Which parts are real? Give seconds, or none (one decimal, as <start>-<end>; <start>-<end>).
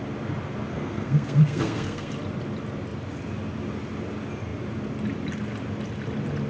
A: 0.0-0.7; 2.1-6.5